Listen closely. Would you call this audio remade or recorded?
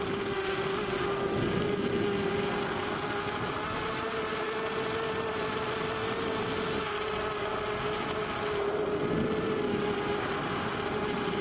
recorded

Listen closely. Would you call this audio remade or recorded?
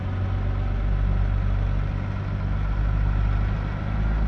recorded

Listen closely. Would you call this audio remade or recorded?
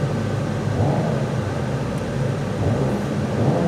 recorded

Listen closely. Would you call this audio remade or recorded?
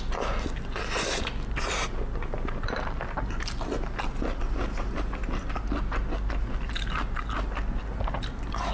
recorded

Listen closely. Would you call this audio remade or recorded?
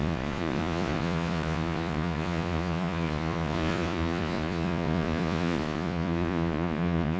remade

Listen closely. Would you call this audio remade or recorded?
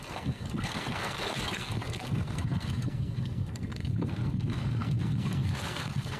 remade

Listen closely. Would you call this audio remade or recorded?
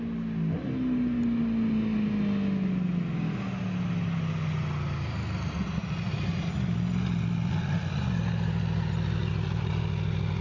recorded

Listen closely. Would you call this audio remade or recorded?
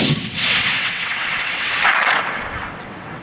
remade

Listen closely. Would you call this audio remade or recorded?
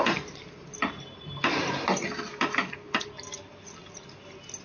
recorded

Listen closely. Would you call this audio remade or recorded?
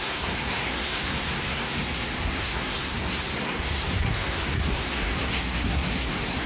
remade